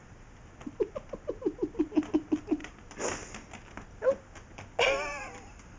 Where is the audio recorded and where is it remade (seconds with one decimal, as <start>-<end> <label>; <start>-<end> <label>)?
0.0-5.8 recorded